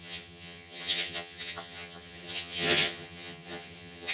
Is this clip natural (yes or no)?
no